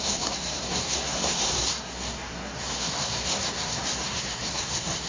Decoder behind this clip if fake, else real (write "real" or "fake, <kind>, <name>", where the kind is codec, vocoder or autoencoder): fake, codec, SNAC